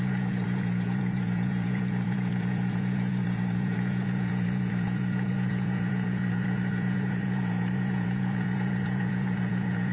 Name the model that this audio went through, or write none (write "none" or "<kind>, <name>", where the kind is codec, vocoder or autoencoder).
vocoder, Vocos